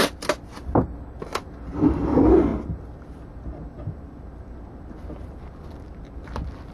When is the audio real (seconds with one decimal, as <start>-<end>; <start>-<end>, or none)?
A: 0.0-6.7